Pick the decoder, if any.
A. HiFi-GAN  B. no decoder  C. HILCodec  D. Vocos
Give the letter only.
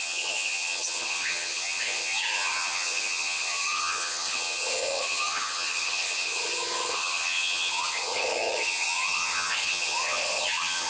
A